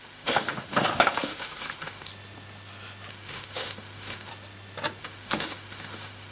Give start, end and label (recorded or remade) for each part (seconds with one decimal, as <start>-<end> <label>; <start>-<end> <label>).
0.0-2.1 remade; 2.1-3.1 recorded; 3.1-4.3 remade; 4.3-5.0 recorded; 5.0-6.3 remade